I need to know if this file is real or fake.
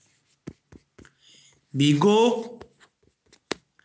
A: real